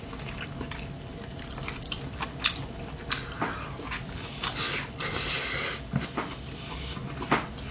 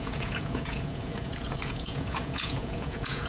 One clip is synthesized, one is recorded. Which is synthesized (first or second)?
second